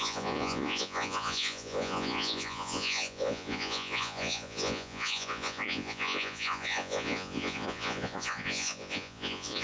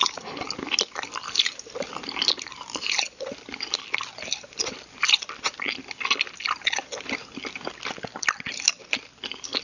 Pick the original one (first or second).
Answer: second